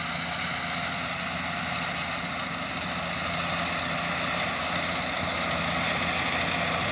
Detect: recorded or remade recorded